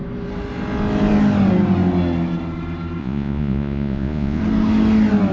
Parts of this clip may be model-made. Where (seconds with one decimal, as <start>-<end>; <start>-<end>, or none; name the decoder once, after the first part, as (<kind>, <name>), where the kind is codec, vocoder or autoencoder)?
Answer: 3.0-4.4 (vocoder, Vocos)